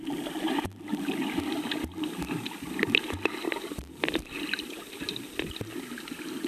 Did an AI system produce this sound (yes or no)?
no